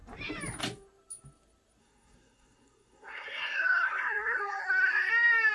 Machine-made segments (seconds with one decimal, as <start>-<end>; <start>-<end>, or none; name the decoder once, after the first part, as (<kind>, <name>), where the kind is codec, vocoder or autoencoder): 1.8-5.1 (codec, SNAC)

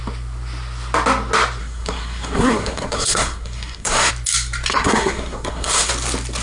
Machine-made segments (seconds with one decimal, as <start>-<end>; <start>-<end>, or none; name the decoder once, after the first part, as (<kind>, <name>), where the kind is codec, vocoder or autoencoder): 1.6-4.1 (codec, SNAC); 4.7-5.9

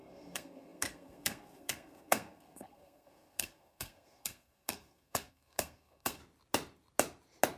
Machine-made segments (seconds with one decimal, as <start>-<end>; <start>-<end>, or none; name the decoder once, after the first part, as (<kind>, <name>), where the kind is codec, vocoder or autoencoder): 0.0-6.2 (codec, SNAC)

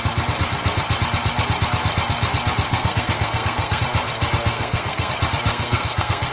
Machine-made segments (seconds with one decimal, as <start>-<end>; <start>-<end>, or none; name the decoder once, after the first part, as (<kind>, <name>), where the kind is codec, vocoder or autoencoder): 2.7-3.8 (codec, SNAC); 4.5-5.1; 5.5-6.3

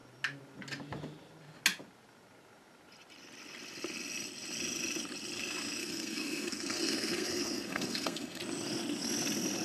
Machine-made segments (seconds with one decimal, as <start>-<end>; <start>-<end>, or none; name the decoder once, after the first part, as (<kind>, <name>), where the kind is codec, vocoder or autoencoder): 5.8-8.4 (codec, SNAC)

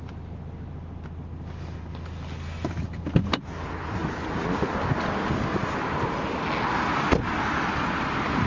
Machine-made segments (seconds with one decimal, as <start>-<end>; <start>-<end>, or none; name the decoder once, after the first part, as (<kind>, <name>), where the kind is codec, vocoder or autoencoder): none